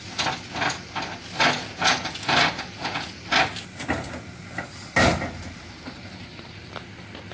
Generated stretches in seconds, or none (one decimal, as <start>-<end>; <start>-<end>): 1.6-3.2